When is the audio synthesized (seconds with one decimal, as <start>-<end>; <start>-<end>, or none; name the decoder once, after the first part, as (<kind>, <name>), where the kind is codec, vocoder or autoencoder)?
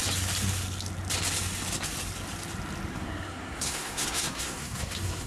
2.9-5.3 (codec, SNAC)